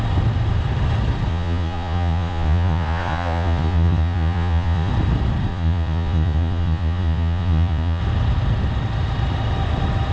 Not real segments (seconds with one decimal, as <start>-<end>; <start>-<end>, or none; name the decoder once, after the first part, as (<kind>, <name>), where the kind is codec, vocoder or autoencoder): 1.3-4.9 (vocoder, Vocos); 5.5-8.0

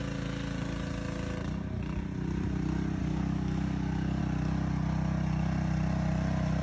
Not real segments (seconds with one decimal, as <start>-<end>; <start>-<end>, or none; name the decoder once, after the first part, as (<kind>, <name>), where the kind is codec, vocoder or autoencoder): 3.0-4.2 (codec, DAC)

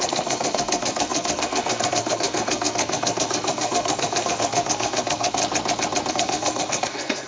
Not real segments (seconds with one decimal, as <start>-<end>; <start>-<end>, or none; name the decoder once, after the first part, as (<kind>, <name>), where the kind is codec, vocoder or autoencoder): 0.0-5.4 (codec, SNAC); 6.1-7.3

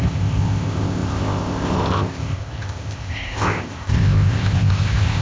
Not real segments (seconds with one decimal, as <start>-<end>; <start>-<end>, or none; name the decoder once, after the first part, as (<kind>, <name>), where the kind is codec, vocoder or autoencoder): 0.0-5.2 (codec, ZipCodec)

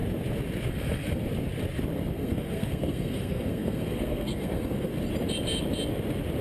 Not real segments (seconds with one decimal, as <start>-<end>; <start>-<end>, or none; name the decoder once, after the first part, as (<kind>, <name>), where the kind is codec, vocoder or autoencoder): 0.7-1.2 (codec, SNAC); 2.1-4.9

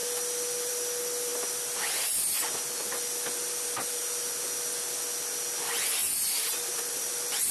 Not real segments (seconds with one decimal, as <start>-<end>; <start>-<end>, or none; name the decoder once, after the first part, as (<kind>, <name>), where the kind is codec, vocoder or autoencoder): 6.0-7.1 (vocoder, BigVGAN v2)